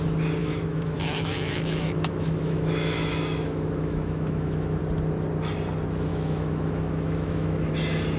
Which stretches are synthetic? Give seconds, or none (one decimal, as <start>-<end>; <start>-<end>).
0.4-4.8; 6.1-7.7